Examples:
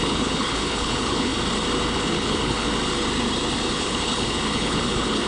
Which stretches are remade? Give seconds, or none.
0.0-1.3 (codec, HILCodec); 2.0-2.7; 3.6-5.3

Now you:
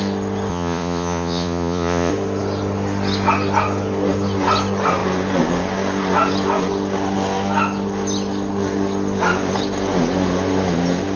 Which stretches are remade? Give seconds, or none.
0.5-2.1 (vocoder, Vocos)

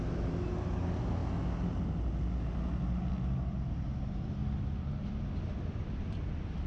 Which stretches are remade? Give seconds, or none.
4.4-5.2 (vocoder, BigVGAN v2)

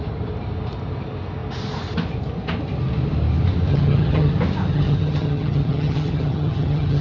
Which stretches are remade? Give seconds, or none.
3.7-4.3 (vocoder, HiFi-GAN); 4.7-7.0

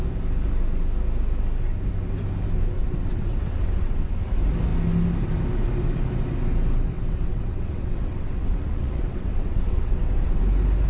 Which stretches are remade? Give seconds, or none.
2.8-4.1 (vocoder, WaveNeXt); 6.9-10.4

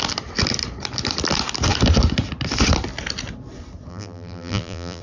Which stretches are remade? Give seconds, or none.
3.9-5.0 (vocoder, BigVGAN v2)

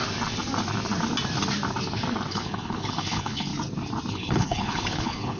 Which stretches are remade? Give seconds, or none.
2.3-3.5 (codec, HILCodec); 4.1-5.4